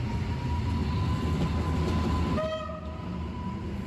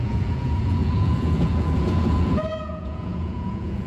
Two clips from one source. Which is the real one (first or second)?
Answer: first